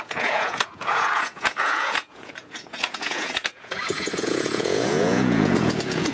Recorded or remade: remade